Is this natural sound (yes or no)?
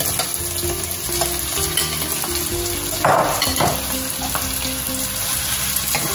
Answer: yes